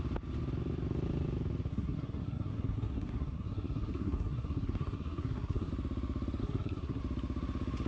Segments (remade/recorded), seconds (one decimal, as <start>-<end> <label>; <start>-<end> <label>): 0.0-1.7 recorded; 1.7-5.7 remade; 5.7-6.4 recorded; 6.4-7.0 remade; 7.0-7.9 recorded